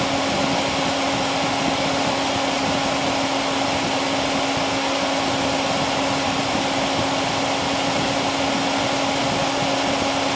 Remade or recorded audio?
recorded